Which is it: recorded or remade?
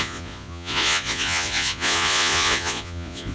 remade